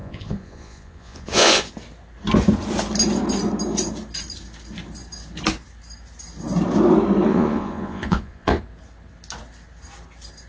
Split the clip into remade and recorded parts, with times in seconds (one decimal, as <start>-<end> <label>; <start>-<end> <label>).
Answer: 0.0-1.7 remade; 1.7-7.3 recorded; 7.3-8.6 remade; 8.6-10.5 recorded